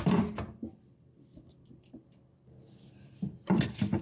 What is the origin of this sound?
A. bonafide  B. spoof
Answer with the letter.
B